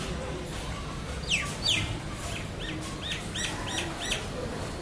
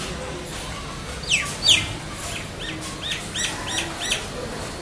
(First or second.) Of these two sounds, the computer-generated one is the first